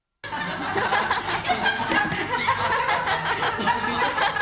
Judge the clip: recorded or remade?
recorded